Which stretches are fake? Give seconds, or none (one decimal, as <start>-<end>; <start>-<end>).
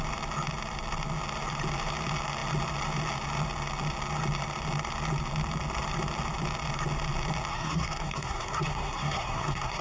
7.5-9.8